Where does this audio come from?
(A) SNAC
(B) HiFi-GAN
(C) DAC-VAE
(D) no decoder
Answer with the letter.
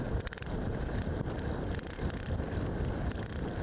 D